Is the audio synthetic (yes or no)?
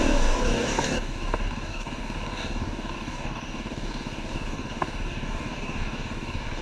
yes